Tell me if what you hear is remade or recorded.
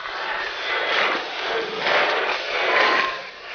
remade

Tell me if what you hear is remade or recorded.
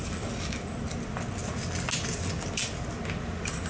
recorded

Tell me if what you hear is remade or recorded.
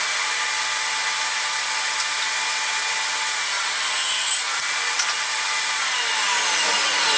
recorded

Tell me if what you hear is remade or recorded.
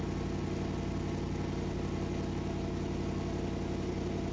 recorded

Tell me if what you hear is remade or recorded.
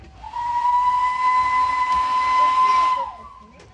recorded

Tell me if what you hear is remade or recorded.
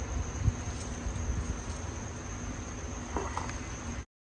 recorded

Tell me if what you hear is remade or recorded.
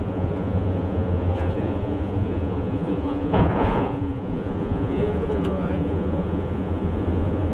remade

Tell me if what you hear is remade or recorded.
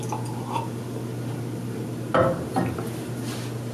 recorded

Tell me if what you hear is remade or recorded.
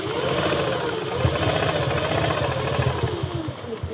recorded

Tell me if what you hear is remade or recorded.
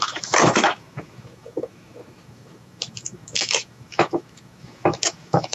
remade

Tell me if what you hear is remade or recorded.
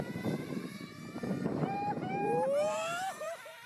remade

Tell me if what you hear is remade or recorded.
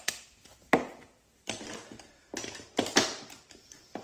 remade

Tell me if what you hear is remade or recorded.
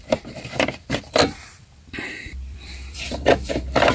remade